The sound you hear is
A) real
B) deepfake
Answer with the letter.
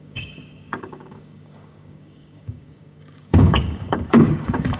B